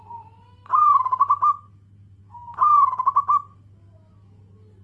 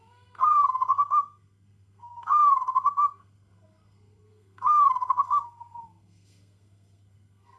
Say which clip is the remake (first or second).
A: second